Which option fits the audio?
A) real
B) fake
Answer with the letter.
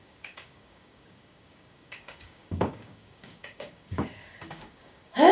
B